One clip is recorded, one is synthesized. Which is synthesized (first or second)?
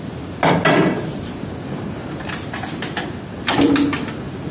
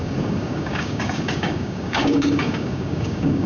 second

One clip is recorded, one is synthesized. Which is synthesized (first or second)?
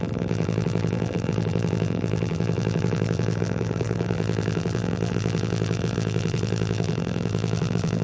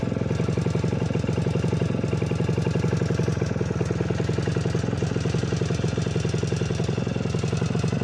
first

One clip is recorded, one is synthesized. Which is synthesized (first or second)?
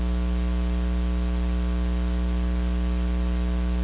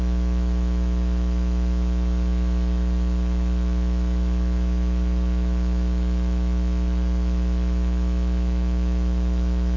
second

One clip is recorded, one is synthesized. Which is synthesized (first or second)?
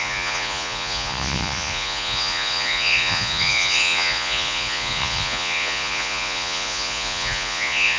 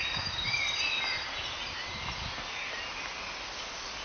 first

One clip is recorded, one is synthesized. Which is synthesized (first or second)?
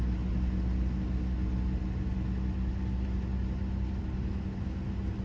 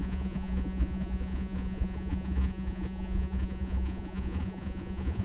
second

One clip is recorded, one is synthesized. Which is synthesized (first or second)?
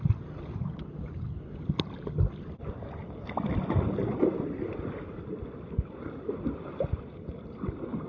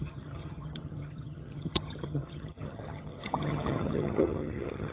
second